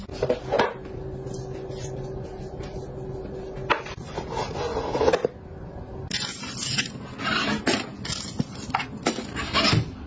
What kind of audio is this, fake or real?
real